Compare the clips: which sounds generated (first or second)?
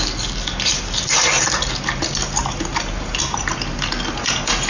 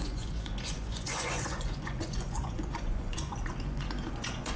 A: second